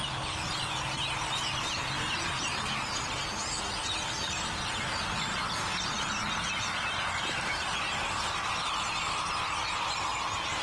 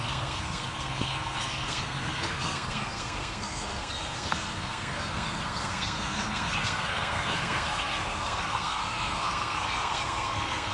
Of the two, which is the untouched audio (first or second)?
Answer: first